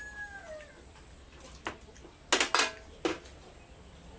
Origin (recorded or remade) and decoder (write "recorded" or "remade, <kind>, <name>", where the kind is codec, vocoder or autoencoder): recorded